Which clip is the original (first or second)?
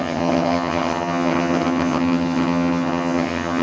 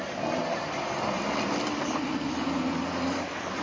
second